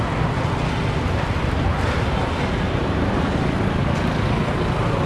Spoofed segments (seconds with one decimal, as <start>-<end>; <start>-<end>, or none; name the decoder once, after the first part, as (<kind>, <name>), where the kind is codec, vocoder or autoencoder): none